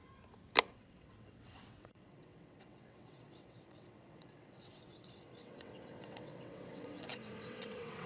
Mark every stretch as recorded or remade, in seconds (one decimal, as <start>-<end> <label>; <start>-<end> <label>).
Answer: 0.0-0.7 recorded; 0.7-8.1 remade

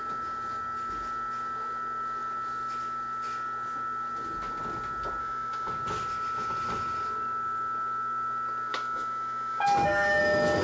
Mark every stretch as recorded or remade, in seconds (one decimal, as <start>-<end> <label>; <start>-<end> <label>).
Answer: 0.0-5.2 recorded; 5.2-5.7 remade; 5.7-8.7 recorded; 8.7-10.2 remade; 10.2-10.6 recorded

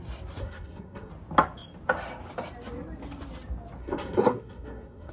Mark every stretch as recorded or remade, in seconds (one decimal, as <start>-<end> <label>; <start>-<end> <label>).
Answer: 0.0-0.4 recorded; 0.4-1.1 remade; 1.1-3.8 recorded; 3.8-5.1 remade

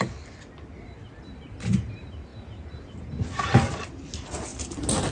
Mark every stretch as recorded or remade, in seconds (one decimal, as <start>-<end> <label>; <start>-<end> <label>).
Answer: 0.0-5.1 recorded